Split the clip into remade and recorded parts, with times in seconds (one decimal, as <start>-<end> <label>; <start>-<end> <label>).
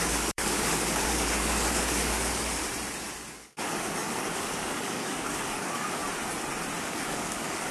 0.0-2.6 remade; 2.6-3.3 recorded; 3.3-6.0 remade; 6.0-6.8 recorded; 6.8-7.7 remade